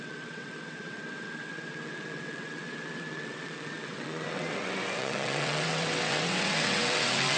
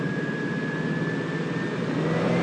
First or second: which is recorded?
second